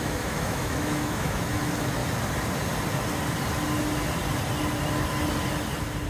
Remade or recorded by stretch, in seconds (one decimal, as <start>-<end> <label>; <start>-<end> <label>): 0.0-2.0 remade; 2.0-6.1 recorded